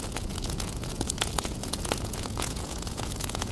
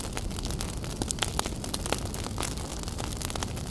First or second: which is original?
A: second